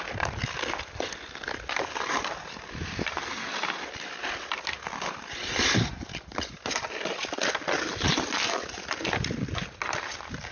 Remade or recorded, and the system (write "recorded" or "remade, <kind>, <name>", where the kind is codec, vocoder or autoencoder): recorded